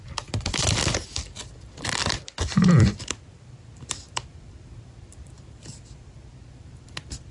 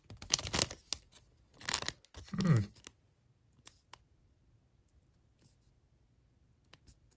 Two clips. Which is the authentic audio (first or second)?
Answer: second